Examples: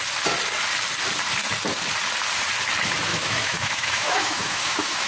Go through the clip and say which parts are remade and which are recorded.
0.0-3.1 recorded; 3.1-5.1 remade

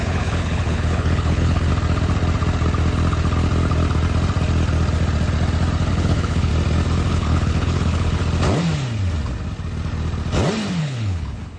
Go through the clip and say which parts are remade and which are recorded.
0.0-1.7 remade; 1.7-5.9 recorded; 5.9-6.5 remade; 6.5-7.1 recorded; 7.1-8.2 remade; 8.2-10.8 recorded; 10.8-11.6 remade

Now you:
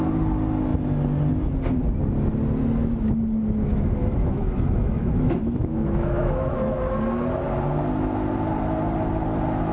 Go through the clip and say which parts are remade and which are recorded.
0.0-3.7 recorded; 3.7-6.8 remade; 6.8-9.7 recorded

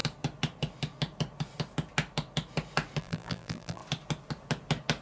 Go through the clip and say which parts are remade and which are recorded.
0.0-3.0 recorded; 3.0-3.8 remade; 3.8-5.0 recorded

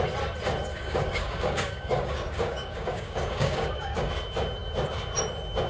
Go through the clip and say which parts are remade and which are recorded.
0.0-0.7 recorded; 0.7-4.1 remade; 4.1-5.7 recorded

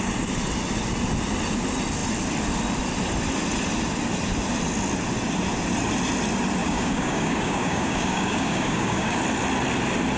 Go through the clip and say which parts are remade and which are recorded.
0.0-6.6 recorded; 6.6-9.2 remade; 9.2-10.2 recorded